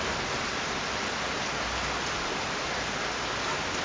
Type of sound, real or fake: real